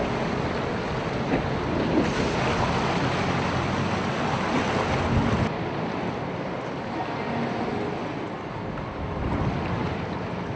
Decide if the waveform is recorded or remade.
recorded